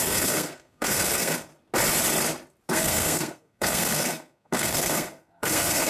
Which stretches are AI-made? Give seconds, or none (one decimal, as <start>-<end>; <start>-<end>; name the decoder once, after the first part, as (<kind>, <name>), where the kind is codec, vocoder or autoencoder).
0.0-1.5 (codec, SNAC); 2.7-5.9